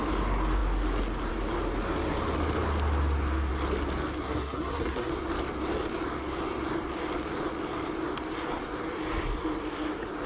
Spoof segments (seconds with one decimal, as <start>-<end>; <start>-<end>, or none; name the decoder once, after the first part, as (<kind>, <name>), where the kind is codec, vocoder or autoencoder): 4.2-5.1 (codec, SNAC)